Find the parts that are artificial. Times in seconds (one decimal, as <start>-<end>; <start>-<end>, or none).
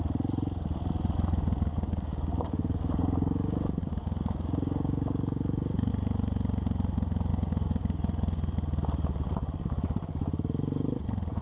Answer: 1.7-5.9; 7.3-8.4